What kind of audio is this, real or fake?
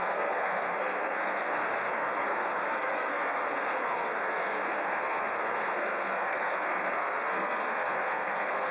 fake